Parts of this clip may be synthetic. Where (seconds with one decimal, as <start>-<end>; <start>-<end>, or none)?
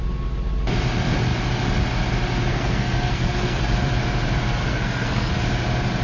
2.5-3.7; 4.6-5.3